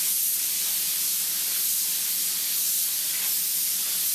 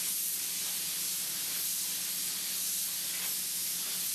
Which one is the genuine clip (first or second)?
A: second